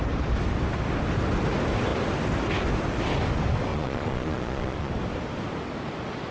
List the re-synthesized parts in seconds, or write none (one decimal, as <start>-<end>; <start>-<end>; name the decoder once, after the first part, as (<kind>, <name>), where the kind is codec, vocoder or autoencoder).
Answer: 3.7-4.9 (vocoder, Vocos)